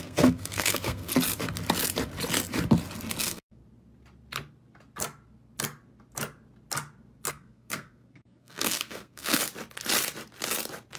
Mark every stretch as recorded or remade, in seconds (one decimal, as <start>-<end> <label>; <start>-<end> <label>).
0.0-1.1 remade; 1.1-3.2 recorded; 3.2-3.6 remade; 3.6-7.3 recorded; 7.3-9.4 remade; 9.4-11.0 recorded